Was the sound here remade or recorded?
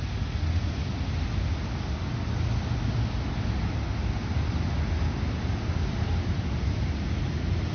recorded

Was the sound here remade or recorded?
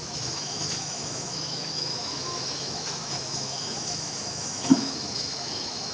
remade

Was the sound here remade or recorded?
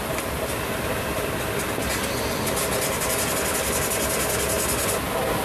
recorded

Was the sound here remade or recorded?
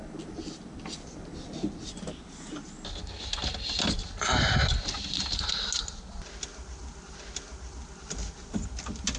recorded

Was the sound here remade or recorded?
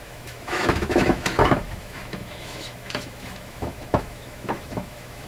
remade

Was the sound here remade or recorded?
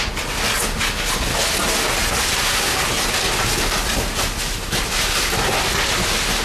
recorded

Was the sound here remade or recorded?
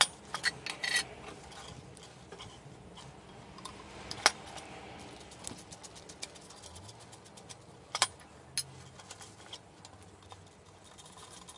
recorded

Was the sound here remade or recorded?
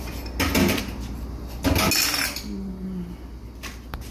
recorded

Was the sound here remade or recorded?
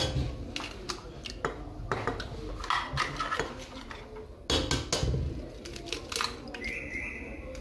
recorded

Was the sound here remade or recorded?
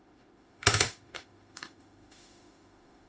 remade